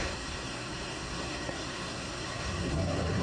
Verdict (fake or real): fake